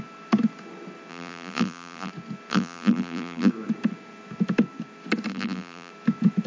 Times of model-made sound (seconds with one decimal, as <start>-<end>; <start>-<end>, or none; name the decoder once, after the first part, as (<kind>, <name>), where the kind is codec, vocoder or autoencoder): 1.1-2.1 (vocoder, BigVGAN v2); 2.5-3.5; 5.3-5.9